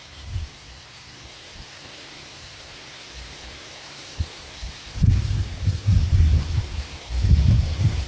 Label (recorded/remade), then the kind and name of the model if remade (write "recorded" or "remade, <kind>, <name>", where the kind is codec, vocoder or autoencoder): remade, codec, SNAC